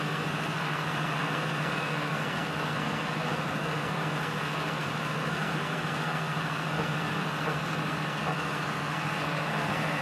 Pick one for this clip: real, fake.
fake